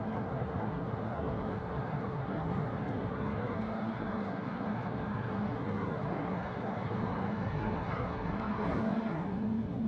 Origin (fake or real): fake